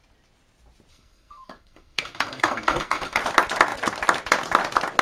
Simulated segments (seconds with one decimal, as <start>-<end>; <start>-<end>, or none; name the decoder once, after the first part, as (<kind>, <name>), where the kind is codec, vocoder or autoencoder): 0.9-3.2 (codec, SNAC)